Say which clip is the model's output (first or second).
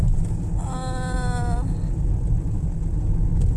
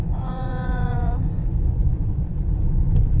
second